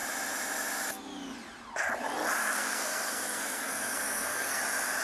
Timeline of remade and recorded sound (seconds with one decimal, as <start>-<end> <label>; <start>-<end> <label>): 0.0-2.4 recorded; 2.4-4.6 remade; 4.6-5.0 recorded